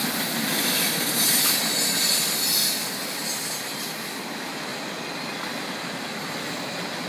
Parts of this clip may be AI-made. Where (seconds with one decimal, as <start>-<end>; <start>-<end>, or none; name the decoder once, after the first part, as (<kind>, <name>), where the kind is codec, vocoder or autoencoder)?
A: none